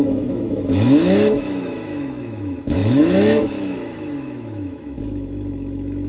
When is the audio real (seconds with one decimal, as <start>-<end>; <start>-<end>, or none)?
none